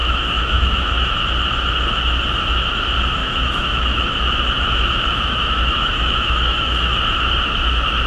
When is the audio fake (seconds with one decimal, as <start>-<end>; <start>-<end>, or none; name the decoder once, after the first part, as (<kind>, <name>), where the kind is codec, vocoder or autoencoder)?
0.0-1.2 (autoencoder, DAC-VAE); 3.2-7.0